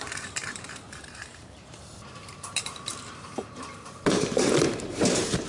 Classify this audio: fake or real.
fake